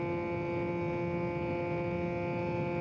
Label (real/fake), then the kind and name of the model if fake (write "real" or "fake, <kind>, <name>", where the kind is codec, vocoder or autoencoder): real